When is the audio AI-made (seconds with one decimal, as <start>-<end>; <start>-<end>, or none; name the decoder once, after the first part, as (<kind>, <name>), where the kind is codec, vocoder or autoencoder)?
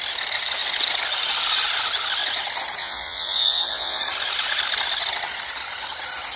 2.8-4.0 (vocoder, Vocos)